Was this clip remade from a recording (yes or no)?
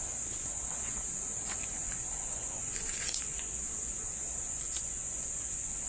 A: yes